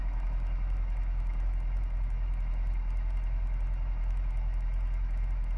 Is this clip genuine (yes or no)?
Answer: no